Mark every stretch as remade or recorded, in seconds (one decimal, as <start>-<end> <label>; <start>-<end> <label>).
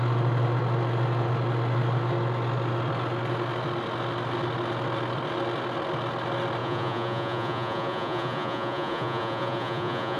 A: 0.0-6.6 recorded; 6.6-10.2 remade